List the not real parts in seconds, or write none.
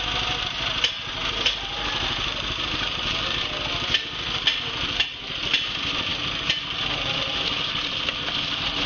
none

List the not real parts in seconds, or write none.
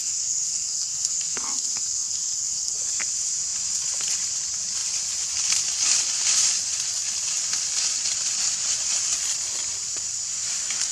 0.0-3.0 (codec, SNAC)